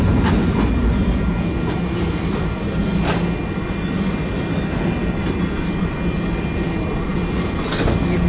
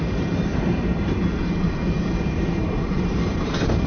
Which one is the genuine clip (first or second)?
first